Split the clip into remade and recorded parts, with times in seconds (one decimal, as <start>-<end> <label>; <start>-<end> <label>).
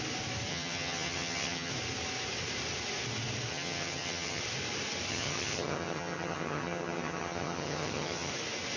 0.0-0.5 recorded; 0.5-1.7 remade; 1.7-3.5 recorded; 3.5-4.4 remade; 4.4-5.1 recorded; 5.1-8.3 remade; 8.3-8.8 recorded